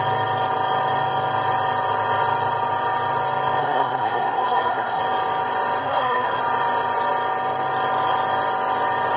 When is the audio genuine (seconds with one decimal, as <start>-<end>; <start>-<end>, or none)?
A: 0.0-3.6; 5.0-5.8; 6.4-9.2